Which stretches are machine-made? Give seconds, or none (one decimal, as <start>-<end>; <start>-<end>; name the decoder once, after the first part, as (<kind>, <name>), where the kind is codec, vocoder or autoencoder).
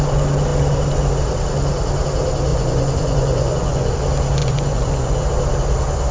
2.5-3.9 (vocoder, Vocos); 4.4-5.2